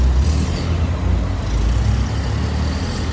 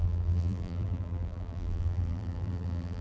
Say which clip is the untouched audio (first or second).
first